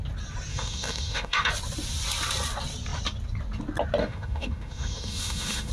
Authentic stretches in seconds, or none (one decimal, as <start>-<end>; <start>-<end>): 0.0-0.5; 1.5-4.0